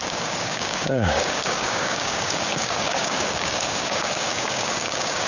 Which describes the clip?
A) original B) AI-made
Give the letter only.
B